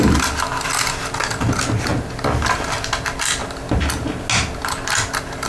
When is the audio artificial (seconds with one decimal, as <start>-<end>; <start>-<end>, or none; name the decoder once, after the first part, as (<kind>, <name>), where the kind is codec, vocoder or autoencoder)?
none